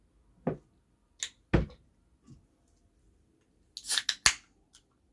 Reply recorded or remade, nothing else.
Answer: recorded